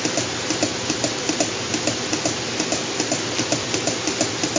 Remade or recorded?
recorded